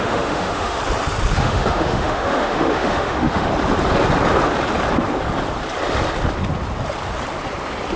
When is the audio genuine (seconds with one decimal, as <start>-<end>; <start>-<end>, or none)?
0.8-1.4; 3.5-8.0